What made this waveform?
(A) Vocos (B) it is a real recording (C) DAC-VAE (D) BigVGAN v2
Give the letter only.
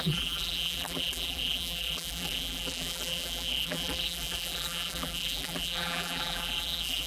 D